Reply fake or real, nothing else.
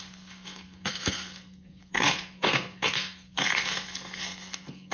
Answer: fake